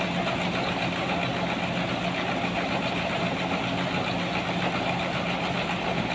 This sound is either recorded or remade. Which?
recorded